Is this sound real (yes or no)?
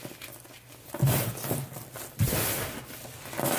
yes